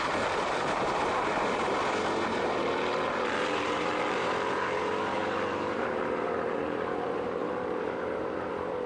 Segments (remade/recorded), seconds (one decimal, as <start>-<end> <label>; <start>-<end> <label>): 0.0-8.9 remade